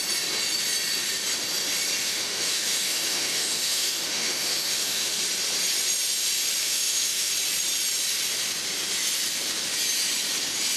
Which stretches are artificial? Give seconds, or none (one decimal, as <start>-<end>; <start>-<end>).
2.0-5.2; 6.6-7.3